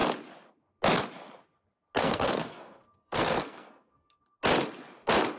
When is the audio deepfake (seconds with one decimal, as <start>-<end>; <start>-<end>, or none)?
2.0-4.2